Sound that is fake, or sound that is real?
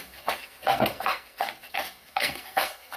fake